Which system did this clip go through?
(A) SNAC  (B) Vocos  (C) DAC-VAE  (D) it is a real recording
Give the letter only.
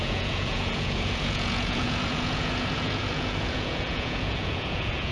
B